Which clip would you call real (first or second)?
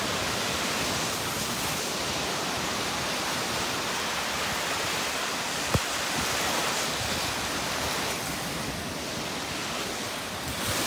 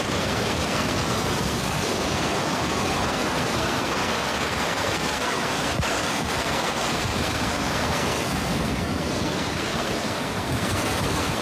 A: first